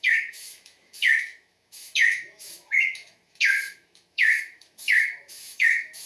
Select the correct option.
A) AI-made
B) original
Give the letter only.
A